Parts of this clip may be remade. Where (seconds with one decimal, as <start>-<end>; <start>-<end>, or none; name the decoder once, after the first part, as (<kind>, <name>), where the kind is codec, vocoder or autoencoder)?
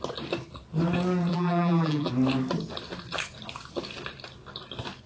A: 1.3-2.1 (vocoder, BigVGAN v2)